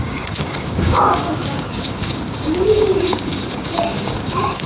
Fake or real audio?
fake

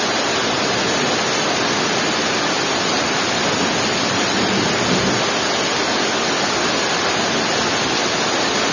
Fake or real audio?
real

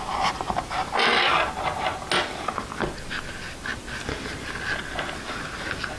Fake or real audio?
real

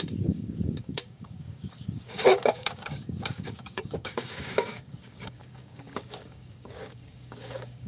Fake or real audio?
fake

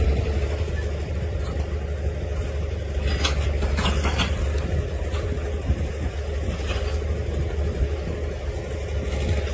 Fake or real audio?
real